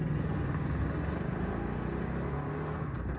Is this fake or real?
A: real